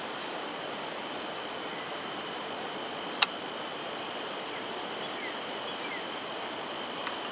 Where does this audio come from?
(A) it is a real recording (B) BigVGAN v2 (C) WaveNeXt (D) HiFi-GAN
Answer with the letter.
A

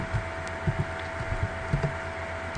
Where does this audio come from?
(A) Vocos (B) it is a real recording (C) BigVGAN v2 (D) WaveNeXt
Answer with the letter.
B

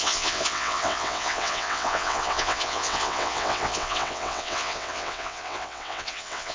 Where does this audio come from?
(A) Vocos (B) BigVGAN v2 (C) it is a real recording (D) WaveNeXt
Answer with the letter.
D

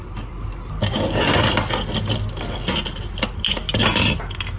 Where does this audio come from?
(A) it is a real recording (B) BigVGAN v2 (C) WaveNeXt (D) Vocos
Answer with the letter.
A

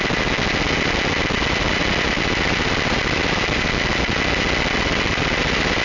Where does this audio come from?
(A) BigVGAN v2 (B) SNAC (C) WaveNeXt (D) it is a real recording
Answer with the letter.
D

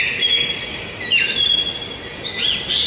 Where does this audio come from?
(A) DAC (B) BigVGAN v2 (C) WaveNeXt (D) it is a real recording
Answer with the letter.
D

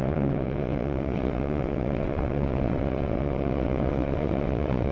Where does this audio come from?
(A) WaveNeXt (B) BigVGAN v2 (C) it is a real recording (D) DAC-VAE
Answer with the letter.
A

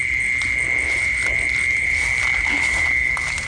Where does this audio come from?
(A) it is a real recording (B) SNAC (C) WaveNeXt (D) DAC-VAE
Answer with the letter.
A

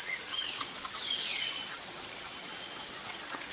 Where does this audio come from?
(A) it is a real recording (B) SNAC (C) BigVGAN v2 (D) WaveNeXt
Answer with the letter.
D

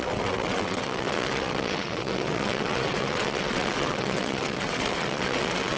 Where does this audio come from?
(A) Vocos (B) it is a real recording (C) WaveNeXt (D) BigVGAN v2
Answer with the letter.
C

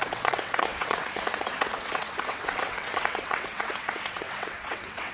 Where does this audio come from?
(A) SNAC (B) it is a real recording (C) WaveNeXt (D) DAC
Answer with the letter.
C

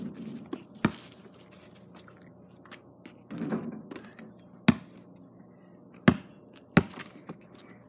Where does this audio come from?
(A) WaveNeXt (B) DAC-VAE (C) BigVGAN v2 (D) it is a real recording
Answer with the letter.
D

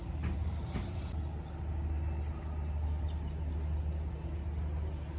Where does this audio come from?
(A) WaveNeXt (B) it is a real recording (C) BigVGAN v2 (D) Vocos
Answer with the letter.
B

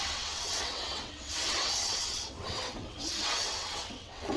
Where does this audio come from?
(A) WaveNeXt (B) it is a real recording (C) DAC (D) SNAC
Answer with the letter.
A